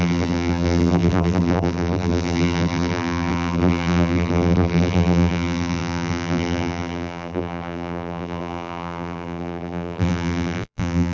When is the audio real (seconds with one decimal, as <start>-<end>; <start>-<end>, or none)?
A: none